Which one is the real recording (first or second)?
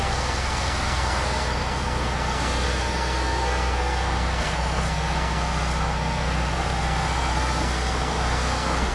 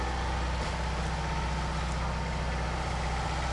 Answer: second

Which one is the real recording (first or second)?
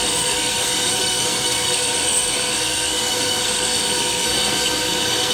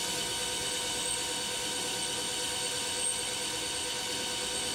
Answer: second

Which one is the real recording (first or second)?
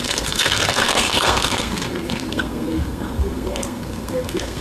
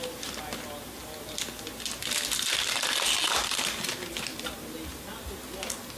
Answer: second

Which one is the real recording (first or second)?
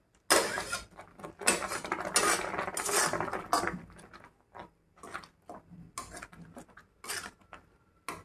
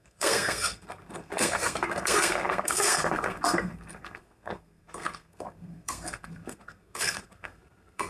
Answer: first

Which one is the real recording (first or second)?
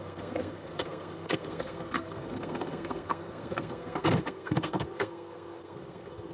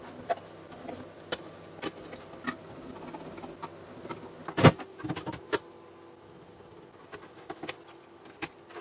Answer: second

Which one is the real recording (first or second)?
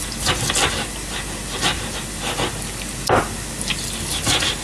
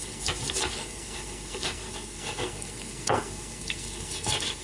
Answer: first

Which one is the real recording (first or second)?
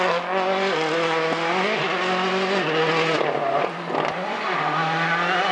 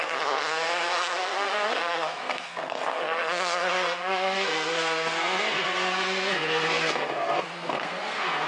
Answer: first